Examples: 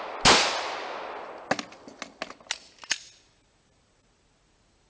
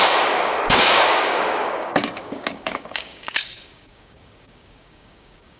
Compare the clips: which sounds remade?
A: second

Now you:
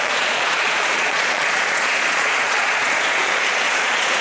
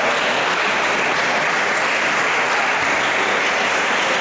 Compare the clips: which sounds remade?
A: first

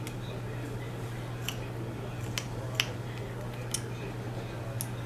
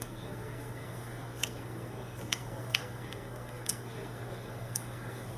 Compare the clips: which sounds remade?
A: second